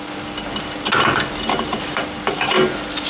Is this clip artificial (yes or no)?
no